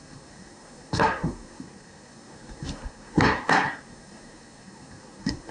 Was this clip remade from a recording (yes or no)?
yes